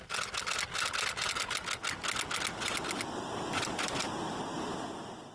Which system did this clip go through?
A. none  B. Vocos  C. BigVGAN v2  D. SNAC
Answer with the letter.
A